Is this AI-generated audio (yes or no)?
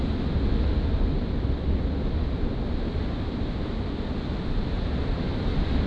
no